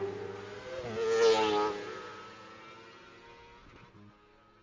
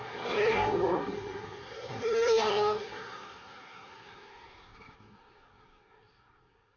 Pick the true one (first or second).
first